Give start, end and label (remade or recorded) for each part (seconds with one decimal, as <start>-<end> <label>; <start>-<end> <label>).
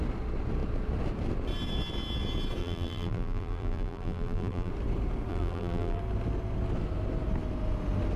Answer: 0.0-2.6 recorded; 2.6-4.7 remade; 4.7-5.3 recorded; 5.3-6.0 remade; 6.0-8.2 recorded